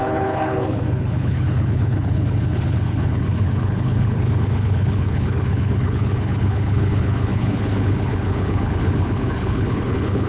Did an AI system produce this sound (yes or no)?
yes